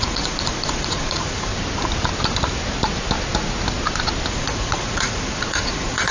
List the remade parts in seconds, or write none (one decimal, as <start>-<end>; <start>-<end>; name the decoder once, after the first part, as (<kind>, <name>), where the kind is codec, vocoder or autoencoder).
0.0-1.5 (vocoder, Vocos); 4.3-6.1